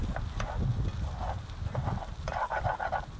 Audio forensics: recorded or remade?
recorded